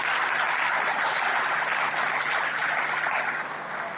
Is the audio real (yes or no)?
yes